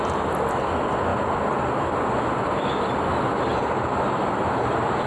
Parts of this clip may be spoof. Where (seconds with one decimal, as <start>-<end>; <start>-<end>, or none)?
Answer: 3.5-4.2